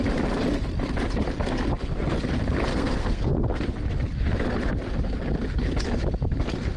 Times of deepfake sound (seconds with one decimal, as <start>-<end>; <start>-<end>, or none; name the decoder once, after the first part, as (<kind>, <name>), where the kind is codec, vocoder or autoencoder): 2.7-3.6 (codec, SNAC)